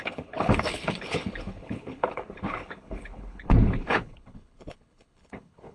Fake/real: fake